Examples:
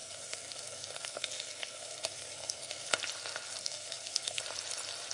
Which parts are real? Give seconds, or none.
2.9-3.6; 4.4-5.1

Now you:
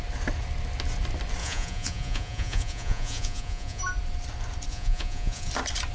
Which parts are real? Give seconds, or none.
0.0-1.4; 3.8-4.7; 5.5-5.9

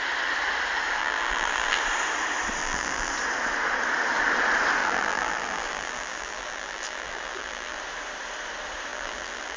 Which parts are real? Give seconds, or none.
0.0-1.0; 1.8-2.6; 3.1-4.8; 7.8-8.9